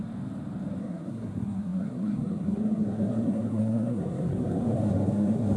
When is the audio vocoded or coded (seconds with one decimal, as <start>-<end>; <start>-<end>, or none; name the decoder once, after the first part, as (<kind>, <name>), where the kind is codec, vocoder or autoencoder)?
0.8-5.6 (codec, SNAC)